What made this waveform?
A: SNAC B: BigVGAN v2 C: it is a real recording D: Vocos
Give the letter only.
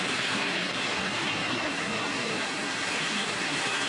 A